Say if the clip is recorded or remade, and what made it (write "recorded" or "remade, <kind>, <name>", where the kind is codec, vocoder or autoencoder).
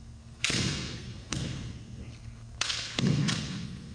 remade, codec, SNAC